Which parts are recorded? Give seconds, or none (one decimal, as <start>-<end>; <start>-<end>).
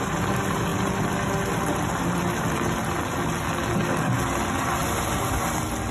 0.0-5.9